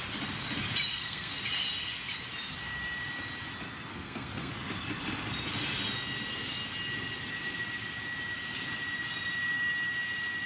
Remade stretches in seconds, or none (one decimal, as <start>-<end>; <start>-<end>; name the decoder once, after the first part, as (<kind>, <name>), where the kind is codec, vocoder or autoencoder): 0.9-1.4 (codec, SNAC); 3.9-4.5